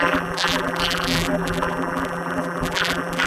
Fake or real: fake